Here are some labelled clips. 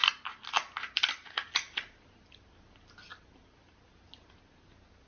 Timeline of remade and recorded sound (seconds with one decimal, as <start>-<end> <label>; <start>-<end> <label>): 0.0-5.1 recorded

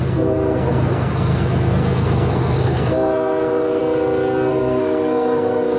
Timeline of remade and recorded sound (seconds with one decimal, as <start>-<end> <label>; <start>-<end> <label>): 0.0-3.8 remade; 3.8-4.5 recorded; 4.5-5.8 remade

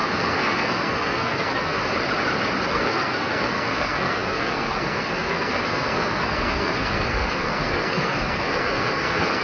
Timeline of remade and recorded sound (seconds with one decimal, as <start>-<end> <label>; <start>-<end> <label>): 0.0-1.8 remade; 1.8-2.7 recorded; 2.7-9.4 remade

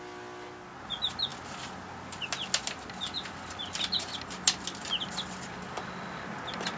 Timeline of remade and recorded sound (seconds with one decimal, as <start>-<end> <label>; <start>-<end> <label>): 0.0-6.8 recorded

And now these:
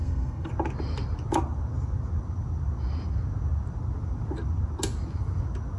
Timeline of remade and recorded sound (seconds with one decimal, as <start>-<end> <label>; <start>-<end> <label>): 0.0-0.5 remade; 0.5-5.8 recorded

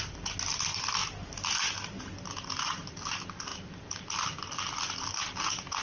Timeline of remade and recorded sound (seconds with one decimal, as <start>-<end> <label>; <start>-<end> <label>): 0.0-5.8 recorded

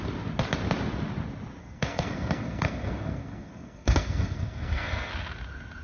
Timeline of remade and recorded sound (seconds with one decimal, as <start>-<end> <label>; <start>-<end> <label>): 0.0-1.6 recorded; 1.6-5.1 remade; 5.1-5.8 recorded